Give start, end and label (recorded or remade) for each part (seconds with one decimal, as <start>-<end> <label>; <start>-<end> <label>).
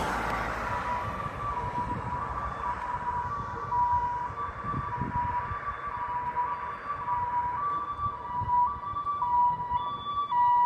0.0-10.7 recorded